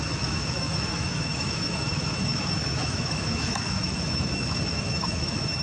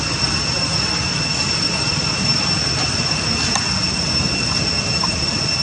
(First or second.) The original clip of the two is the second